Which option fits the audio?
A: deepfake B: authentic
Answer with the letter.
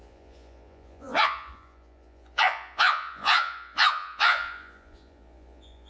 A